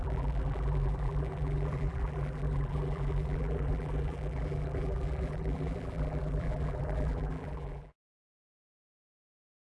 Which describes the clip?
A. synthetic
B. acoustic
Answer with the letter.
A